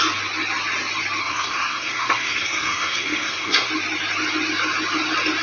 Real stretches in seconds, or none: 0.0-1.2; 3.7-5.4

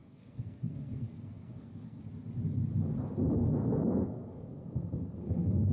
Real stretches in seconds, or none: 2.0-3.4

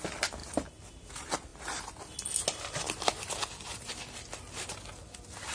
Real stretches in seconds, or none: 0.0-5.5

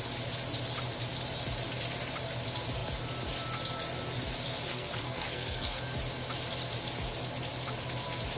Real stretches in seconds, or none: 0.0-4.7; 5.8-8.4